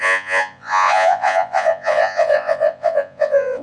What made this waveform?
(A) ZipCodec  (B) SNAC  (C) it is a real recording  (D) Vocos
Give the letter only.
D